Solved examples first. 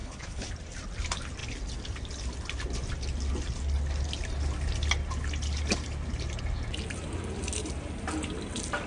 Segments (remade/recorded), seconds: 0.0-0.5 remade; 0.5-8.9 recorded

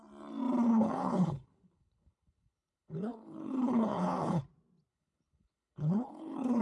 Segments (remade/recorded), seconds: 0.0-0.7 recorded; 0.7-4.4 remade; 4.4-4.9 recorded; 4.9-6.6 remade

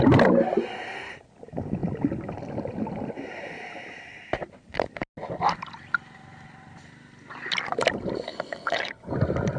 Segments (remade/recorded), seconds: 0.0-8.3 recorded; 8.3-9.1 remade; 9.1-9.6 recorded

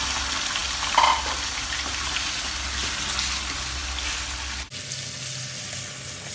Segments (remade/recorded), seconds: 0.0-6.3 recorded

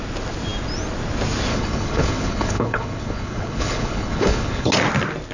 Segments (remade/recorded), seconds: 0.0-1.5 recorded; 1.5-4.7 remade; 4.7-5.3 recorded